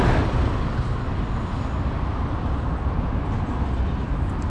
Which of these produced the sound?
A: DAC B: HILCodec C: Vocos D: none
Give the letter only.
D